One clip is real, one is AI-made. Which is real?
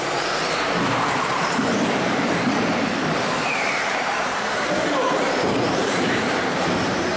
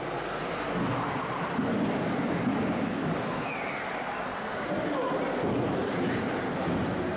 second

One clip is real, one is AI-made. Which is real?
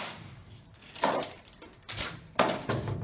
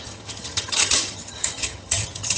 first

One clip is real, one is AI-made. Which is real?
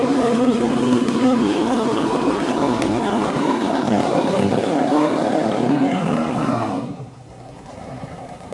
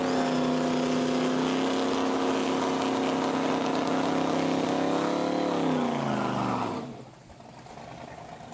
second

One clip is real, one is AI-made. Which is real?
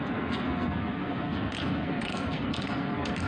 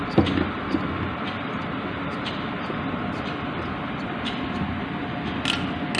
second